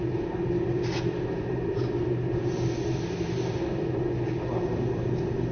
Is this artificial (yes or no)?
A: no